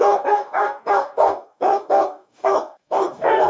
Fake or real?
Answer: fake